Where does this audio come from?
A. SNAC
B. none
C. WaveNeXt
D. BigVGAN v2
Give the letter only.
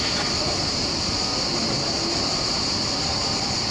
D